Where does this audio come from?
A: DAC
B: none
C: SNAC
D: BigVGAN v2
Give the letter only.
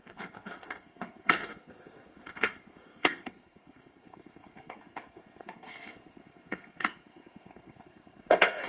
C